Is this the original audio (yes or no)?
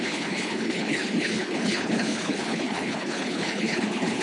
no